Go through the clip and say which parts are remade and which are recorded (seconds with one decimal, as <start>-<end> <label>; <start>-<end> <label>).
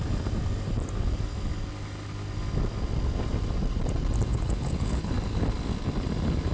0.0-4.3 recorded; 4.3-5.1 remade; 5.1-6.5 recorded